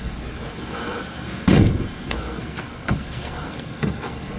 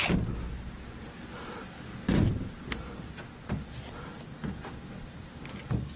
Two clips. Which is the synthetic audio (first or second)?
first